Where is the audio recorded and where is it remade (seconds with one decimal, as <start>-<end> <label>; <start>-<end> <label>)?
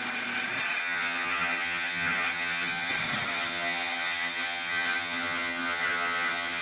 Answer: 0.0-0.8 recorded; 0.8-2.9 remade; 2.9-3.3 recorded; 3.3-6.6 remade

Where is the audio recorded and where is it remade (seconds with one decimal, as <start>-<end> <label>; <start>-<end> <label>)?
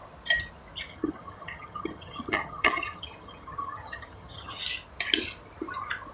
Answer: 0.0-0.9 recorded; 0.9-4.6 remade; 4.6-6.1 recorded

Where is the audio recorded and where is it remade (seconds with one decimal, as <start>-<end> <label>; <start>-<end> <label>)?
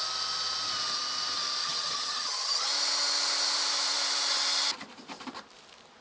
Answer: 0.0-1.6 recorded; 1.6-2.7 remade; 2.7-6.0 recorded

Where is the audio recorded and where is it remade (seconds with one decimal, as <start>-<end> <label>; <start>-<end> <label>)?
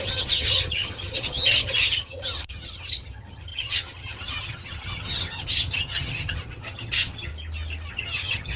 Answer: 0.0-7.3 remade; 7.3-7.9 recorded; 7.9-8.6 remade